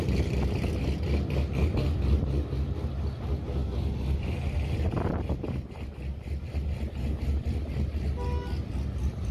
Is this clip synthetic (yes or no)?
no